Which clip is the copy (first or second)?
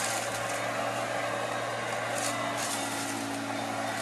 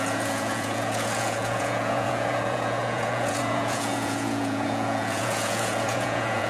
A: second